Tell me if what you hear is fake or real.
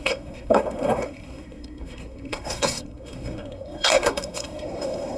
fake